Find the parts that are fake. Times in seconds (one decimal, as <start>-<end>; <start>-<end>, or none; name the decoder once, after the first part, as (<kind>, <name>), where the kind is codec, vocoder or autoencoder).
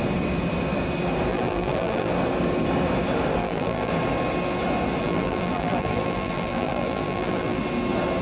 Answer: 1.3-2.1 (vocoder, BigVGAN v2); 3.4-3.9; 5.0-7.6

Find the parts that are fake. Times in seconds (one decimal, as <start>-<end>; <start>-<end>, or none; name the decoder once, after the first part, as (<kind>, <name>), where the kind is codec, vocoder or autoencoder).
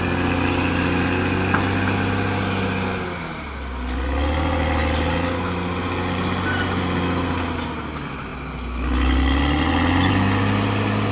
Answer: none